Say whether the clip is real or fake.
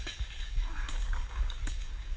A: fake